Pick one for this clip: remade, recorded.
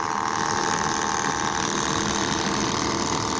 recorded